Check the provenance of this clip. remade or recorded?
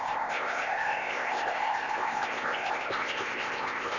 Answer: remade